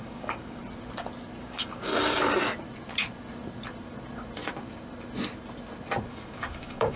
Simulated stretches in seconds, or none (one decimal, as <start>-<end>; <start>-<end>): 0.0-0.6; 1.4-1.9; 6.1-7.0

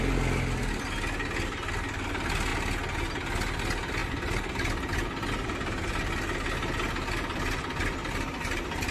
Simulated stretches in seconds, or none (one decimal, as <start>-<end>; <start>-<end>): none

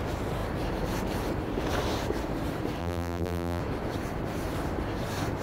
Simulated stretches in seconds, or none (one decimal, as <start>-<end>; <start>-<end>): 2.8-3.6

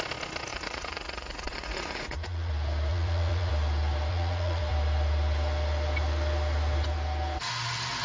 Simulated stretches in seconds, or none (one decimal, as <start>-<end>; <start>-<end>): 0.5-2.5; 2.9-3.5; 4.1-4.6

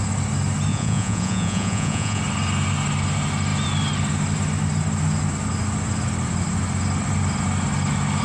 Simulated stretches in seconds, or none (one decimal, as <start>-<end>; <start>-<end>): 0.7-2.2